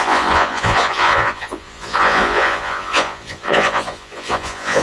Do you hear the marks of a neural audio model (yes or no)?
yes